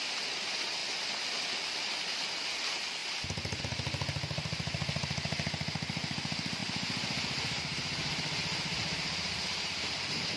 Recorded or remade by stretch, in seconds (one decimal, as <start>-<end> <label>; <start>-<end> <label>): 0.0-3.0 recorded; 3.0-3.6 remade; 3.6-6.6 recorded; 6.6-10.4 remade

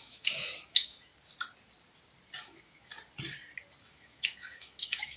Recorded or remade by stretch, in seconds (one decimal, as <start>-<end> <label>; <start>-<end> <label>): 0.0-1.1 remade; 1.1-2.4 recorded; 2.4-2.9 remade; 2.9-3.9 recorded; 3.9-5.2 remade

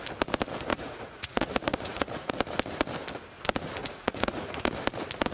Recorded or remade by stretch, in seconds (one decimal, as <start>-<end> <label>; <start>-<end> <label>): 0.0-0.7 recorded; 0.7-2.3 remade; 2.3-3.8 recorded; 3.8-4.7 remade; 4.7-5.3 recorded